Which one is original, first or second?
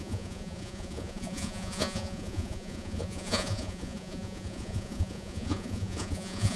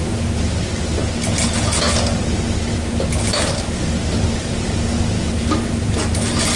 second